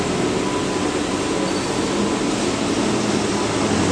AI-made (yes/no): no